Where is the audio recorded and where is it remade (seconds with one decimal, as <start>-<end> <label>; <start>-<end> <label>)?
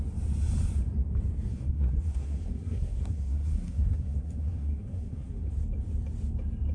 0.0-1.5 recorded; 1.5-5.5 remade; 5.5-6.7 recorded